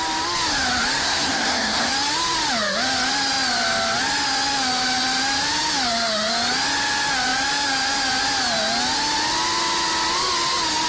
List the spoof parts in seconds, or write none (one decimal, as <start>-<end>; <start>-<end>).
1.0-1.9